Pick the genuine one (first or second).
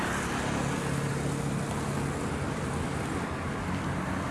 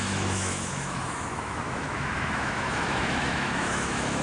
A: first